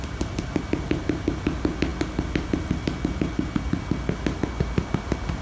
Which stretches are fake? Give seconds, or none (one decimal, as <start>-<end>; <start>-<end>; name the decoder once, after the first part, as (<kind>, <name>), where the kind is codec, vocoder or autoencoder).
none